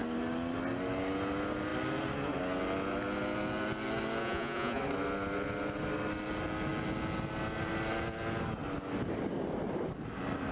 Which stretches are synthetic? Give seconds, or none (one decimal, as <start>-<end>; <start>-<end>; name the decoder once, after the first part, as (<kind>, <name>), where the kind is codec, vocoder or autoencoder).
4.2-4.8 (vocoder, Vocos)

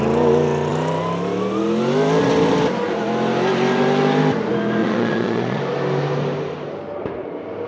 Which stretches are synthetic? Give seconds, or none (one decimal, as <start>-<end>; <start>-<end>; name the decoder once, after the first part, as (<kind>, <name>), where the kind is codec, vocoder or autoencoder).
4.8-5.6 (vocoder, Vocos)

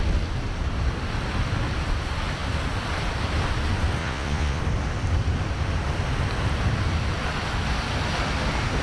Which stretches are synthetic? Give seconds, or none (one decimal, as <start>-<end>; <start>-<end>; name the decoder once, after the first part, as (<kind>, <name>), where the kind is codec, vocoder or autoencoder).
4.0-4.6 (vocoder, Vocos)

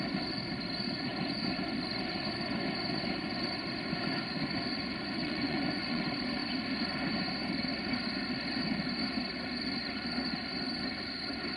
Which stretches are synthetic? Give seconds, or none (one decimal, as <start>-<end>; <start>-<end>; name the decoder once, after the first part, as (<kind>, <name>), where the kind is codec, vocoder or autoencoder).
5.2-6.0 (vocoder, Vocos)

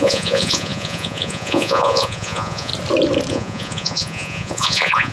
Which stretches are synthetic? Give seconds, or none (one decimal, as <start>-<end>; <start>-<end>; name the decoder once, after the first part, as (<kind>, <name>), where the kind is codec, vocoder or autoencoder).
0.0-2.7 (vocoder, Vocos); 3.3-5.1

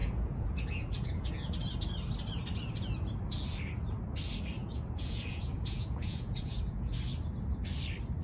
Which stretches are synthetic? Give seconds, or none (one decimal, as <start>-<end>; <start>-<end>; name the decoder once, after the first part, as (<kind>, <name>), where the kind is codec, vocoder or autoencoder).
0.0-1.3 (vocoder, Vocos); 4.6-7.0